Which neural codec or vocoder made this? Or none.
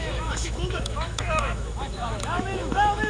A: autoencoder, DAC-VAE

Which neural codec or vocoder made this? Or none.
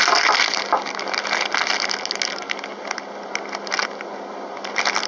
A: none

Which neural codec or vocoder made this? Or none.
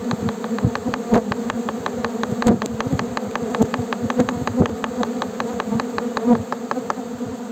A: none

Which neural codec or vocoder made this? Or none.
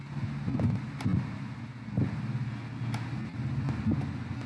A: none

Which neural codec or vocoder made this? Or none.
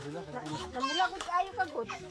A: autoencoder, DAC-VAE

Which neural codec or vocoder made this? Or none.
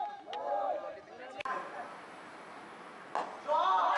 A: none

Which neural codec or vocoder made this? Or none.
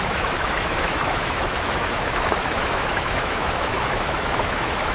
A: autoencoder, DAC-VAE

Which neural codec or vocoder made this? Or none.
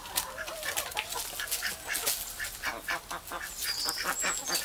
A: none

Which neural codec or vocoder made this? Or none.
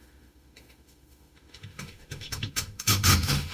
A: autoencoder, DAC-VAE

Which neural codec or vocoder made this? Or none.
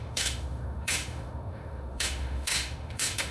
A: autoencoder, DAC-VAE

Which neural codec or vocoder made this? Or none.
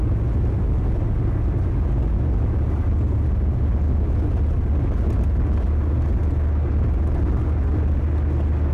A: none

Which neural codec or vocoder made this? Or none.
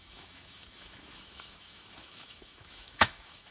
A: autoencoder, DAC-VAE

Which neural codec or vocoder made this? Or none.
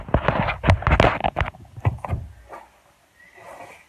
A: none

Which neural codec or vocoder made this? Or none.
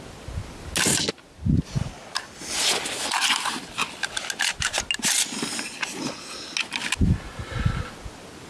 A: none